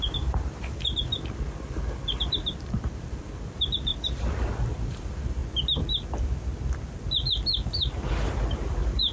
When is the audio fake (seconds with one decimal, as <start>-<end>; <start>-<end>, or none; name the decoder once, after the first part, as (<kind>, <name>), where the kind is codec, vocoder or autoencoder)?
0.0-5.4 (vocoder, BigVGAN v2); 8.7-9.1